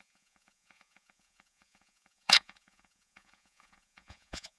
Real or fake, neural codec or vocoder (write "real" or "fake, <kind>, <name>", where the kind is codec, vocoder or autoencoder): fake, vocoder, Vocos